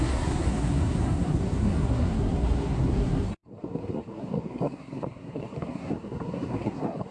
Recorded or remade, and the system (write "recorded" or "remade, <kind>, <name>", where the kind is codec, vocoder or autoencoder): remade, codec, SNAC